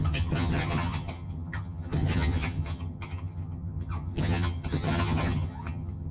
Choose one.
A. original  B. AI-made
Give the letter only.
B